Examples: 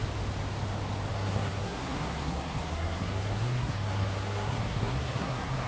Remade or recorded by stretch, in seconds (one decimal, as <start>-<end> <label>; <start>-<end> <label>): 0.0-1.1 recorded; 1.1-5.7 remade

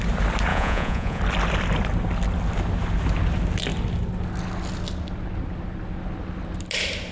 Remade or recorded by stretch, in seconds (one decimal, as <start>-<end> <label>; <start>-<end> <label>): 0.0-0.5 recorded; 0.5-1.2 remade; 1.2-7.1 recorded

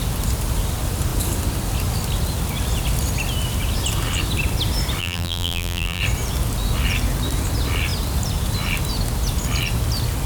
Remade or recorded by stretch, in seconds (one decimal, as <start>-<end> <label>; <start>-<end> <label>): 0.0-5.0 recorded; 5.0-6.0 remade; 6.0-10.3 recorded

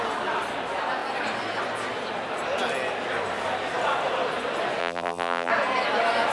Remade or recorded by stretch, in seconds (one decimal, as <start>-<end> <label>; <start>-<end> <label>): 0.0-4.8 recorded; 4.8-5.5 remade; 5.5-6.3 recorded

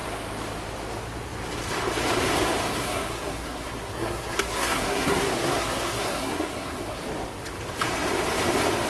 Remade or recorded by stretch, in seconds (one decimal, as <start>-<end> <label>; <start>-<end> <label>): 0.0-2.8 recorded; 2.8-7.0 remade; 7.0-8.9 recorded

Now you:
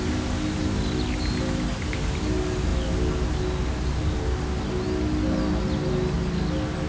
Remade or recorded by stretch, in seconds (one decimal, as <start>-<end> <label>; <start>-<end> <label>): 0.0-6.9 recorded

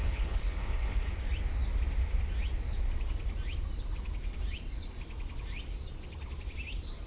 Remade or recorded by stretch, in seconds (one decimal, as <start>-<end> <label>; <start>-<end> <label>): 0.0-1.1 remade; 1.1-7.1 recorded

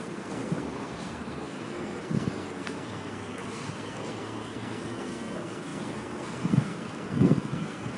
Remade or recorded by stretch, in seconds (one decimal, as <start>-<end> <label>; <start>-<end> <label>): 0.0-8.0 remade